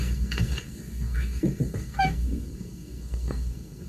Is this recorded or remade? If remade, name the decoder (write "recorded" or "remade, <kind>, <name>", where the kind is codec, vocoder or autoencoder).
remade, codec, SNAC